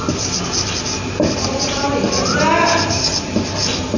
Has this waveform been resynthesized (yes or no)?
no